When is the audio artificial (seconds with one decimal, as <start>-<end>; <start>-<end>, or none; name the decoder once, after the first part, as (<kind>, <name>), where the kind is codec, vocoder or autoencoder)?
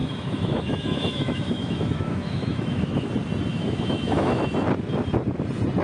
0.0-3.1 (autoencoder, DAC-VAE); 3.5-4.4